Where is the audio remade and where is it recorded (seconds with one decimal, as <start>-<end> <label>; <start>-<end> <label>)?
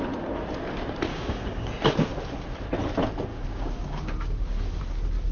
0.0-1.1 recorded; 1.1-1.7 remade; 1.7-3.3 recorded; 3.3-4.8 remade; 4.8-5.3 recorded